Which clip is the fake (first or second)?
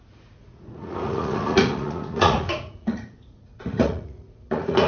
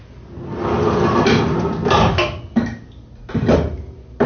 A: first